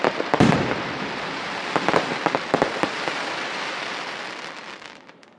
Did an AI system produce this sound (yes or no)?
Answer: yes